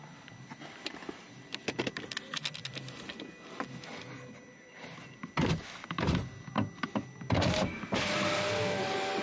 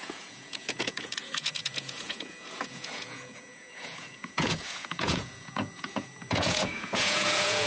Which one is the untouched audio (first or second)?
first